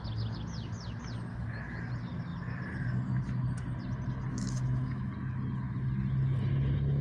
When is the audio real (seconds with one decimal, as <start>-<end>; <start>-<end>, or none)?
0.0-1.3; 1.9-4.3; 5.1-7.0